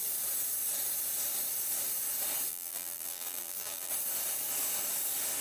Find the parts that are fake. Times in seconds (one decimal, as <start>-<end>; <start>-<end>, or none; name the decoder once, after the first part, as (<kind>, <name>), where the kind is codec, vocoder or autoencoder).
2.5-3.9 (vocoder, BigVGAN v2)